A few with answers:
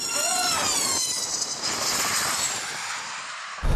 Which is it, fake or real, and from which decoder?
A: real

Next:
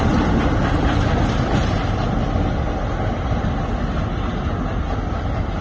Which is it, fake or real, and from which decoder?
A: real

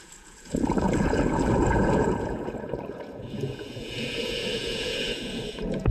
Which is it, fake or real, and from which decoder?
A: fake, vocoder, Vocos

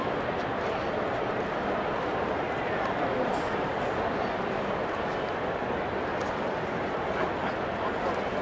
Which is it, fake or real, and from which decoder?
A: real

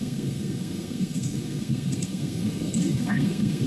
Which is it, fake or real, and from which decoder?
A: fake, codec, SNAC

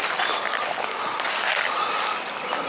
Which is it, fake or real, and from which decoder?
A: real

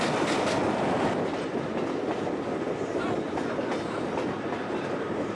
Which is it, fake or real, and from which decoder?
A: real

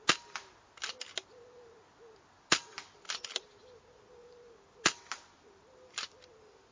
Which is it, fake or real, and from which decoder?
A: real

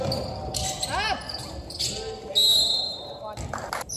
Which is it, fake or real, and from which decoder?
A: real